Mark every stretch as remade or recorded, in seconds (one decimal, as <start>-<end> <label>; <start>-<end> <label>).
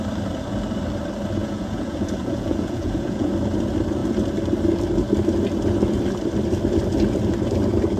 0.0-1.4 recorded; 1.4-3.3 remade; 3.3-8.0 recorded